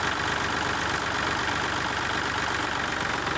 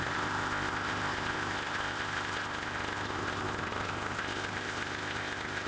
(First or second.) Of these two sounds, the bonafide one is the first